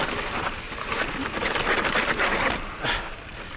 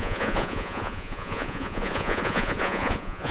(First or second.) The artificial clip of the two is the second